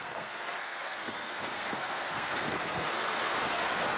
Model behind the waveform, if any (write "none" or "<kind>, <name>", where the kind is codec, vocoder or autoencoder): codec, SNAC